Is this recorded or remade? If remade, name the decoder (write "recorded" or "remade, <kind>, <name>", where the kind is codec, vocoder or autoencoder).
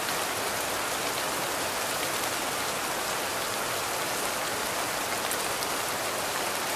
recorded